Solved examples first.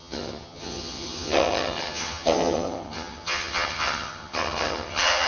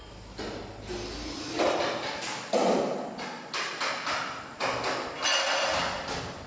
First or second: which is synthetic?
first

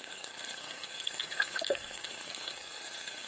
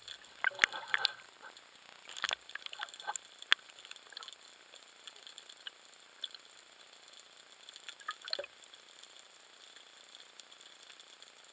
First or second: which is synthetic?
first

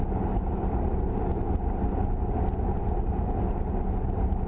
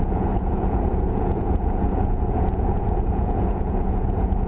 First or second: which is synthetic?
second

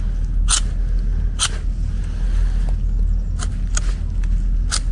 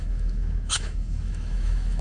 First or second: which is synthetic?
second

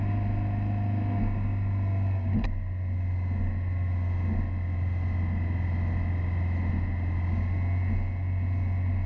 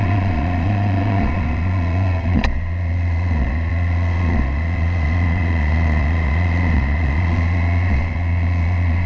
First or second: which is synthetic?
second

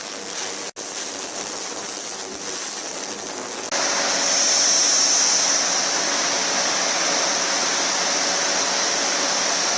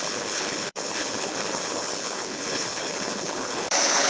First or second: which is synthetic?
second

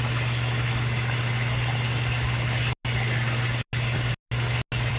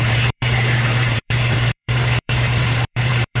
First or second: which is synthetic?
second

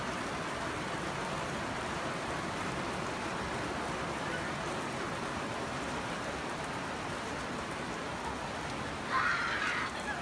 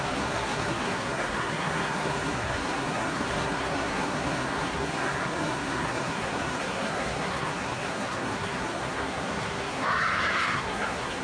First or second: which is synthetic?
second